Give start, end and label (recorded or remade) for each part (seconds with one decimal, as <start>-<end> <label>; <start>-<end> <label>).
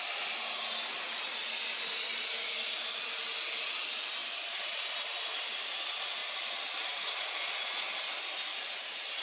0.0-2.1 recorded; 2.1-2.9 remade; 2.9-4.2 recorded; 4.2-5.2 remade; 5.2-6.2 recorded; 6.2-7.2 remade; 7.2-8.5 recorded; 8.5-9.2 remade